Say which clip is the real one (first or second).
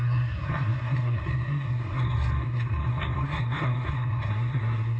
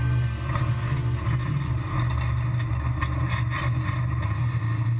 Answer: second